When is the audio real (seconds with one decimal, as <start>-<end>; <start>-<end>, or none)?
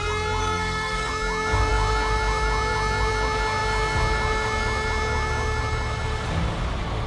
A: 0.0-0.4; 1.1-7.1